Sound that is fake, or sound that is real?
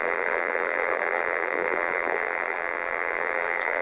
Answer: fake